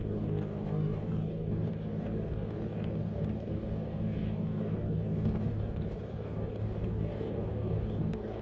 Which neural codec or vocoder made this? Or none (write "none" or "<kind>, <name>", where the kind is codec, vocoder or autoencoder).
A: codec, DAC